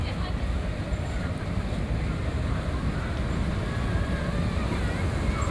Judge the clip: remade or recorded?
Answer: recorded